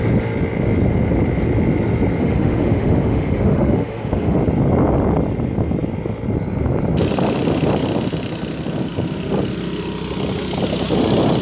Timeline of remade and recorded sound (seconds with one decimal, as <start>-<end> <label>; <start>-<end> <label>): 0.0-2.2 recorded; 2.2-4.4 remade; 4.4-11.4 recorded